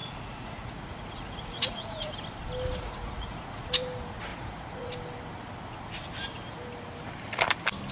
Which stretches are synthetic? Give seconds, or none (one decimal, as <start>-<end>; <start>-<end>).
0.0-2.1; 2.8-3.7; 4.3-4.9